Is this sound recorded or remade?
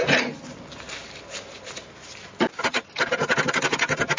recorded